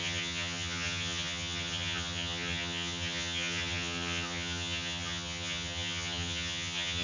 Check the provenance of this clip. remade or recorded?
remade